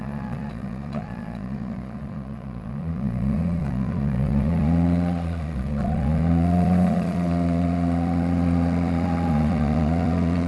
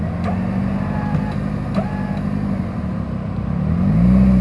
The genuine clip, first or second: second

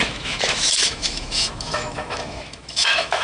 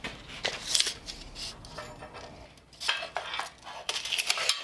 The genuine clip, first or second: second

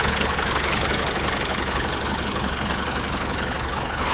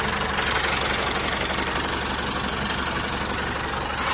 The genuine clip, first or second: second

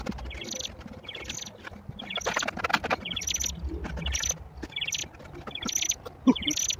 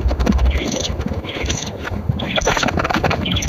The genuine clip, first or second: first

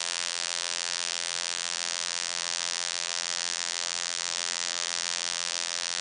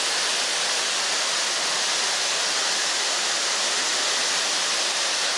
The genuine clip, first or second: second